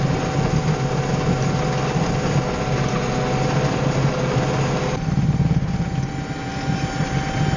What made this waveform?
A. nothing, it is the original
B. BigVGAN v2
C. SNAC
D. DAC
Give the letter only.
A